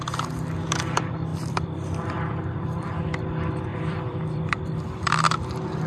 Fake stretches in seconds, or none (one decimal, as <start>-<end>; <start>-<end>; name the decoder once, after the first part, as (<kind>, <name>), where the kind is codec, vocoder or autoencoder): 1.3-3.0 (vocoder, BigVGAN v2); 3.7-4.6